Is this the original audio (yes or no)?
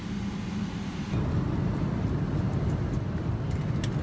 yes